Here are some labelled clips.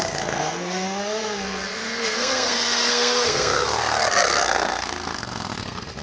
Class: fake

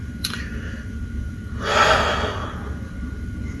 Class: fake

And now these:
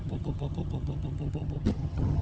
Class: fake